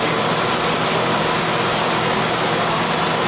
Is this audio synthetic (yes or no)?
no